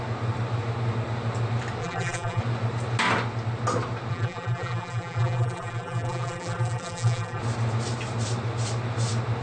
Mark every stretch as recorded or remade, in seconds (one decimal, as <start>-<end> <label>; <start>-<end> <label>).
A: 0.0-1.8 recorded; 1.8-2.4 remade; 2.4-4.1 recorded; 4.1-7.4 remade; 7.4-9.4 recorded